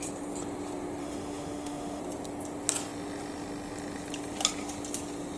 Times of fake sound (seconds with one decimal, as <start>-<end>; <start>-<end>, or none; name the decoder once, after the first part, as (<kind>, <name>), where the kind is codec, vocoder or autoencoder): 1.0-2.0 (autoencoder, DAC-VAE)